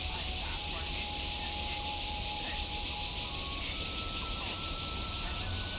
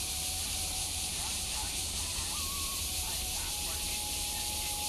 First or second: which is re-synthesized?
second